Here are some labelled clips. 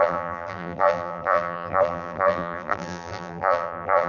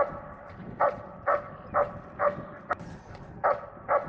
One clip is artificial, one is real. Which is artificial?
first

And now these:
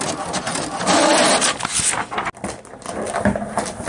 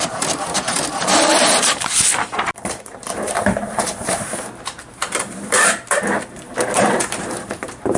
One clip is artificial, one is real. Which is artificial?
second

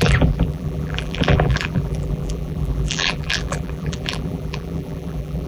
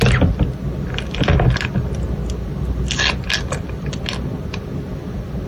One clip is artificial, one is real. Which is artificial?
first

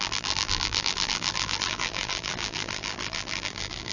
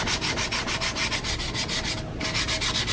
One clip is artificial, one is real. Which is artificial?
first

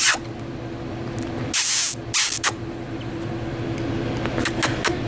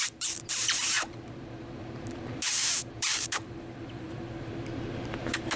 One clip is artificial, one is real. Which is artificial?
second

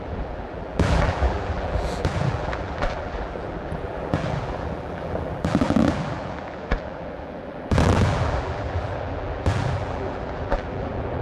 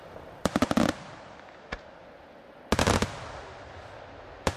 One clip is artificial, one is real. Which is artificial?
first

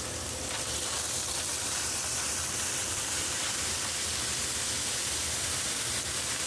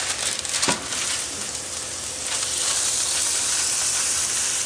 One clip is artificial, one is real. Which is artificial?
first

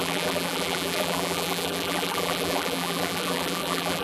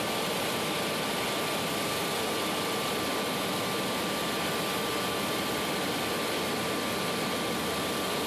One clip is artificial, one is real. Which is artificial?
first